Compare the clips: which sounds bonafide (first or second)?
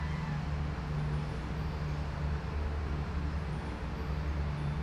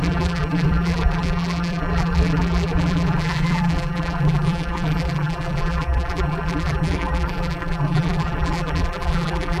first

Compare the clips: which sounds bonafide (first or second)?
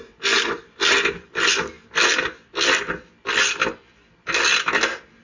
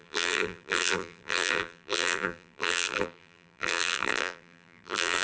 first